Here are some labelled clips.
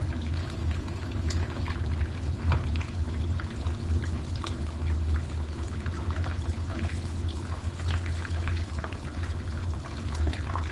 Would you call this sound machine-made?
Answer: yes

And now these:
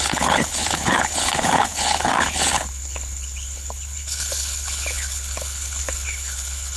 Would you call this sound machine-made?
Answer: yes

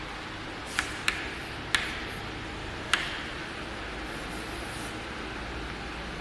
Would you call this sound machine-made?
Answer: no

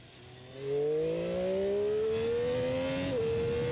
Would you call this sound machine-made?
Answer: no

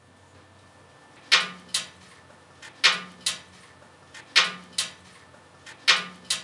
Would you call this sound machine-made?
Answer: no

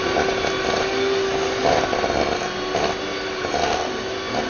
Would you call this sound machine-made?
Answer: no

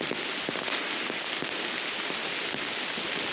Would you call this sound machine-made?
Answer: no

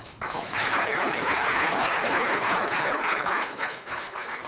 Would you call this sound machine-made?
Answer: yes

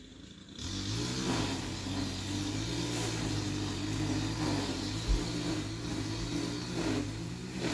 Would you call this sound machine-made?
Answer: no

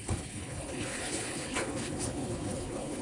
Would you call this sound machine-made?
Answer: yes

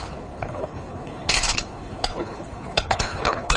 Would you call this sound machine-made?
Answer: yes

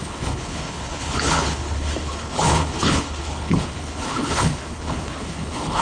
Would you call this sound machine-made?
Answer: yes